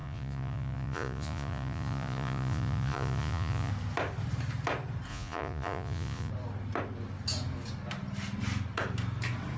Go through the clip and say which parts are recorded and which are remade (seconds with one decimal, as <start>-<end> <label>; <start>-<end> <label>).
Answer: 0.0-3.7 remade; 3.7-5.1 recorded; 5.1-6.3 remade; 6.3-9.6 recorded